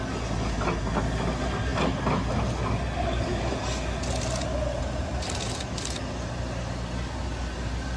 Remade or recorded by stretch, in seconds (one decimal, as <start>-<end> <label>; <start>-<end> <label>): 0.0-8.0 recorded